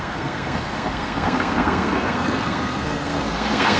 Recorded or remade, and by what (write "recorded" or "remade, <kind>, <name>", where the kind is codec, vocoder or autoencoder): remade, codec, SNAC